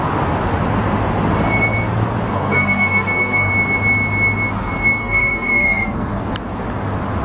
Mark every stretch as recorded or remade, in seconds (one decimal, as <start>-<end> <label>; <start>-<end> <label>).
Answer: 0.0-2.3 recorded; 2.3-3.5 remade; 3.5-5.0 recorded; 5.0-6.3 remade; 6.3-7.2 recorded

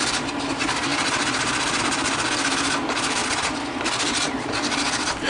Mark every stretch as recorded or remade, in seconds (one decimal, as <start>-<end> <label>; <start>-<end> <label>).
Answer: 0.0-5.3 recorded

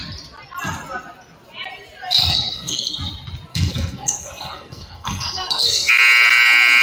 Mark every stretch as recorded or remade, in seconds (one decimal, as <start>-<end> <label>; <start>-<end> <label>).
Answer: 0.0-2.2 recorded; 2.2-3.0 remade; 3.0-3.5 recorded; 3.5-5.9 remade; 5.9-6.8 recorded

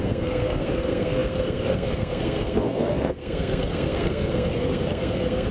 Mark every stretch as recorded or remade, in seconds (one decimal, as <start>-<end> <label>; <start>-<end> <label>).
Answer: 0.0-5.5 remade

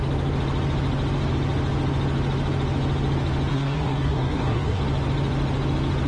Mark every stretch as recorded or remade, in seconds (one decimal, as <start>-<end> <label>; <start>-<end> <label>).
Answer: 0.0-3.5 recorded; 3.5-4.8 remade; 4.8-6.1 recorded

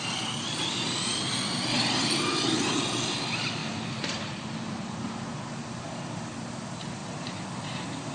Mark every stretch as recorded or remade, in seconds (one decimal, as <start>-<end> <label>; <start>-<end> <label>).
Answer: 0.0-8.1 recorded

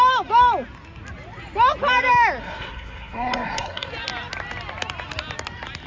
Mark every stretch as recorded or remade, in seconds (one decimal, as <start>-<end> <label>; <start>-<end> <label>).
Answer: 0.0-2.4 recorded; 2.4-3.9 remade; 3.9-5.9 recorded

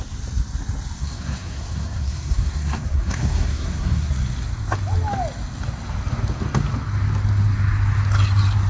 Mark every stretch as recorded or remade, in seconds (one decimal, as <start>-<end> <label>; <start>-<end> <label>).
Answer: 0.0-1.0 recorded; 1.0-4.1 remade; 4.1-8.7 recorded